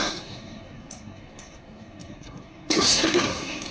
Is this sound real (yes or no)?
no